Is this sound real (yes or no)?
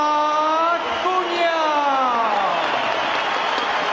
yes